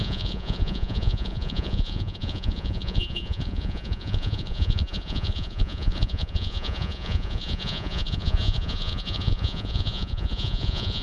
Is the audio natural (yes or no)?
no